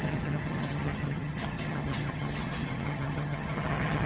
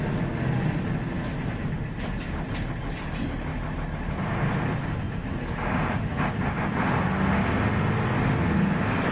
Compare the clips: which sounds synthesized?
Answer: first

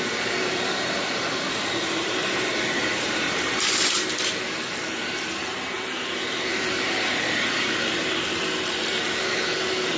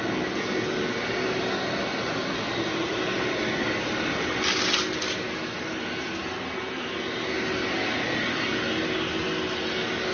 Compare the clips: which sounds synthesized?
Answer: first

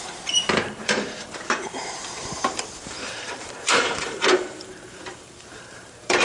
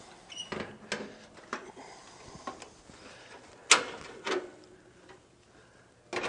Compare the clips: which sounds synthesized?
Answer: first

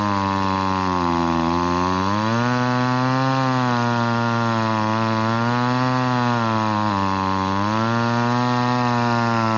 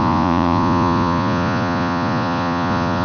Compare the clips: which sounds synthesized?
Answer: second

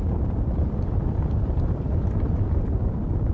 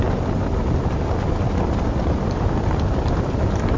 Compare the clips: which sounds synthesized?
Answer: first